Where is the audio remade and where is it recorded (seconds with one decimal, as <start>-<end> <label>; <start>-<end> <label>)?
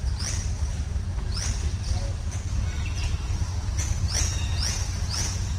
0.0-5.6 recorded